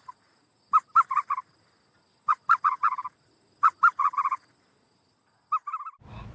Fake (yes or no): no